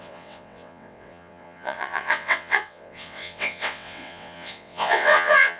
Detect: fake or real fake